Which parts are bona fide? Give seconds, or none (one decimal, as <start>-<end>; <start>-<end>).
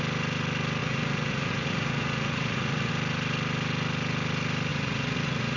0.0-0.8; 2.9-4.7